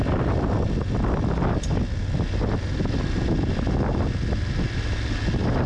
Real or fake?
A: real